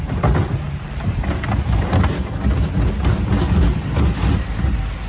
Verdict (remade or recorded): recorded